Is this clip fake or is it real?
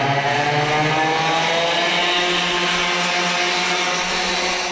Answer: real